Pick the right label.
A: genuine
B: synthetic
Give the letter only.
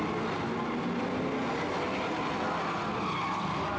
A